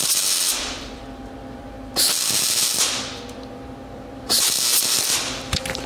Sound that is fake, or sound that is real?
fake